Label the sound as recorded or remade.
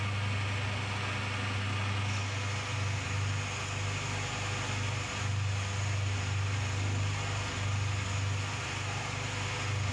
recorded